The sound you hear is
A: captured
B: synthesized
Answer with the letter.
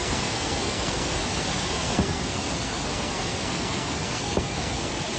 B